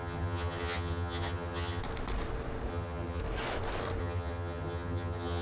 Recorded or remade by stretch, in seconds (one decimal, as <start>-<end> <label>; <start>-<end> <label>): 0.0-1.8 remade; 1.8-2.7 recorded; 2.7-3.2 remade; 3.2-4.0 recorded; 4.0-5.4 remade